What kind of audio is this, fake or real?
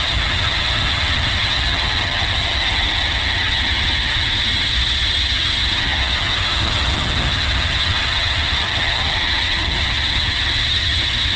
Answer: fake